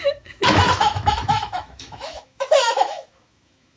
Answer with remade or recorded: remade